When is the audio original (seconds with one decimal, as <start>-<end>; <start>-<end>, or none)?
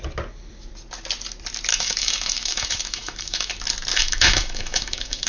0.0-1.7; 3.5-3.9